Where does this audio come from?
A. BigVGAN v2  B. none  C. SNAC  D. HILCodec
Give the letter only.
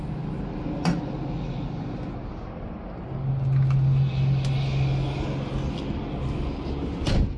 B